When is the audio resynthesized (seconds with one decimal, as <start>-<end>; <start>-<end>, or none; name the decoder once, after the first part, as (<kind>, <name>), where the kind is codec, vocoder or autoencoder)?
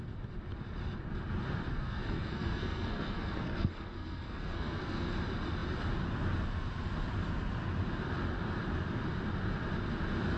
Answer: 1.7-5.1 (codec, SNAC)